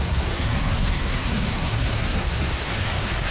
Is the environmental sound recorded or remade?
remade